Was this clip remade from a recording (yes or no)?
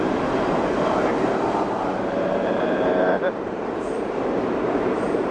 yes